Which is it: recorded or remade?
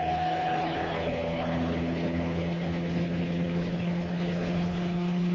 remade